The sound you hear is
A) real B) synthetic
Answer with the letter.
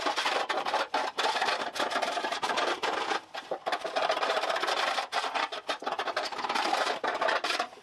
B